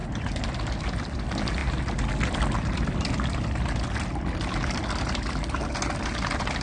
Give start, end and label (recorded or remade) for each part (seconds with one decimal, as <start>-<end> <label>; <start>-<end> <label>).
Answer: 0.0-6.6 recorded